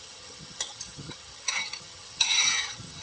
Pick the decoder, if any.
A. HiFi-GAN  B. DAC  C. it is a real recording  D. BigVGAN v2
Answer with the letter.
A